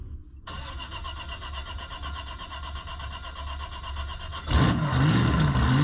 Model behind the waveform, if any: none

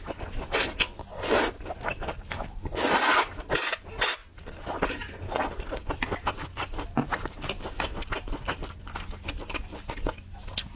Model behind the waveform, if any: none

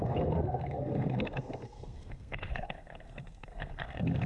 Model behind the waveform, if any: codec, SNAC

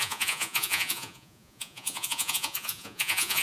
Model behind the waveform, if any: vocoder, Vocos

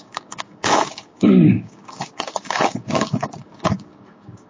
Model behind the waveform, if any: codec, DAC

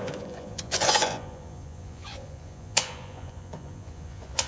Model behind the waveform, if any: vocoder, Vocos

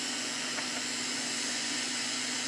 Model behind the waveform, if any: vocoder, Vocos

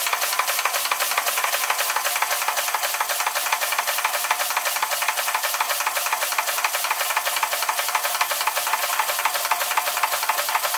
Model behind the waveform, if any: none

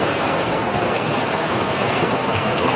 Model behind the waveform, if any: codec, SNAC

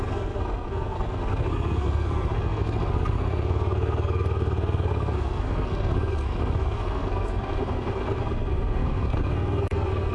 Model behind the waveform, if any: codec, SNAC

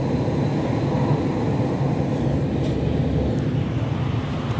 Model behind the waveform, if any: none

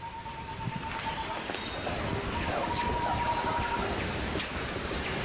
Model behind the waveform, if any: none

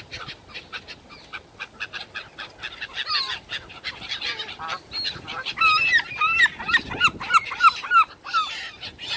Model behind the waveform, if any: none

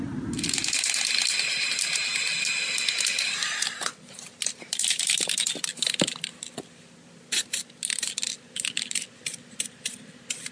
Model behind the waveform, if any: none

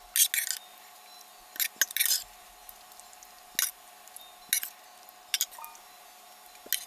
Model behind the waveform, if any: none